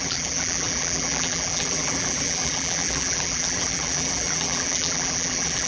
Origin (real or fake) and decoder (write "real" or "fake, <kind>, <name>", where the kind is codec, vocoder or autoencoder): fake, vocoder, BigVGAN v2